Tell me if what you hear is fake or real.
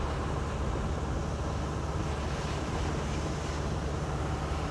real